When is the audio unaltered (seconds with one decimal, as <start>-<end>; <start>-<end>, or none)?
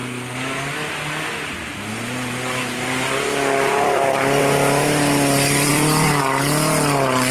4.4-5.7; 6.2-7.3